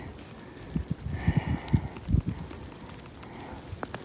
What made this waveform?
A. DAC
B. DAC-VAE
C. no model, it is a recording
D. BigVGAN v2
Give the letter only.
C